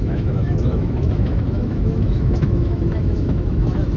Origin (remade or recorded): remade